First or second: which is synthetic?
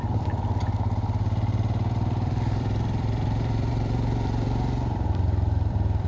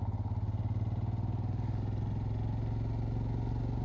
first